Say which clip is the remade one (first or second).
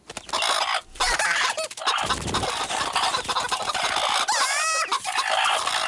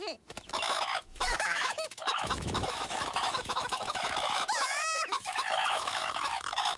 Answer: second